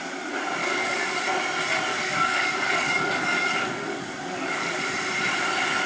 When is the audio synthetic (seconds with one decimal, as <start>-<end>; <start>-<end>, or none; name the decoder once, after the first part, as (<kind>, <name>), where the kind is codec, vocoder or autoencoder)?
0.6-1.2 (codec, DAC); 1.9-4.8